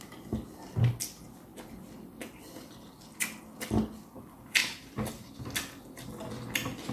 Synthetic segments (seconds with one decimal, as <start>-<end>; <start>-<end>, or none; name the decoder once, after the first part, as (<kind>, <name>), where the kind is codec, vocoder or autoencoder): 4.6-5.4 (vocoder, BigVGAN v2)